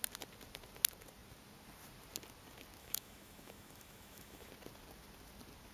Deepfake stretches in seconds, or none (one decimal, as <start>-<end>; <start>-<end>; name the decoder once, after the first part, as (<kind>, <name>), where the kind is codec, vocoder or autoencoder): 2.8-4.5 (autoencoder, DAC-VAE)